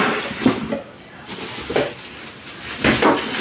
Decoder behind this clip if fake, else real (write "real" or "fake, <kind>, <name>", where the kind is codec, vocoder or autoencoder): real